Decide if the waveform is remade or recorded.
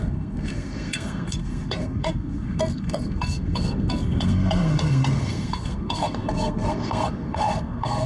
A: remade